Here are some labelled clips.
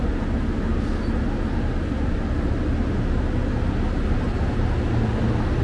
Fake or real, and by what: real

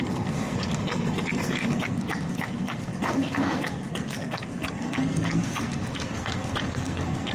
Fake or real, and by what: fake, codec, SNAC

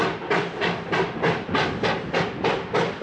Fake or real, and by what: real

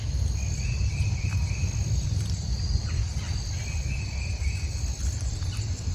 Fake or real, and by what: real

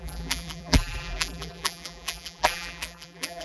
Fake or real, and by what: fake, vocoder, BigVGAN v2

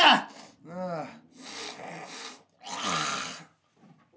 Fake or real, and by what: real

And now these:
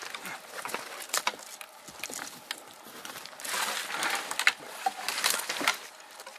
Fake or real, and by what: real